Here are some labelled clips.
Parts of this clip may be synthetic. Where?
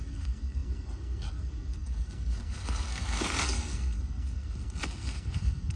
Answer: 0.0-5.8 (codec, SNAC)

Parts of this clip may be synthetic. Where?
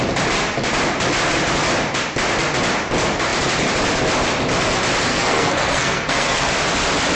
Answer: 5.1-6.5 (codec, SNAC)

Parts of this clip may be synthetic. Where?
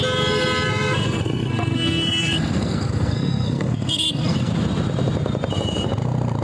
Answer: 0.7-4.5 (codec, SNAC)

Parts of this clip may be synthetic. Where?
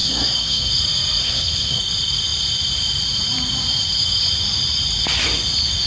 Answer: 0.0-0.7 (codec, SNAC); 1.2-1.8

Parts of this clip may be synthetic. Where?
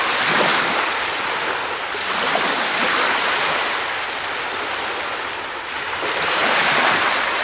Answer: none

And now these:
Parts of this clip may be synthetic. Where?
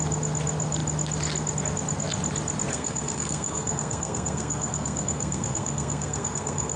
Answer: 2.7-6.8 (codec, SNAC)